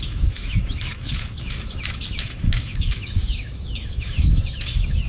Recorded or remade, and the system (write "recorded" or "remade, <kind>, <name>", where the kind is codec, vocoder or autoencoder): remade, autoencoder, DAC-VAE